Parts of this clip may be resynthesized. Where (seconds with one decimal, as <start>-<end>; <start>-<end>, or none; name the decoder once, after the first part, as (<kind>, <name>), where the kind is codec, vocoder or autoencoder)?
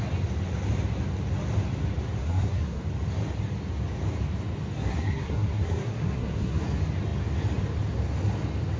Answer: 2.2-2.8 (codec, SNAC); 4.9-6.6